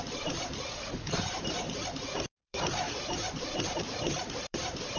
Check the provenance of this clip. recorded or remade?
remade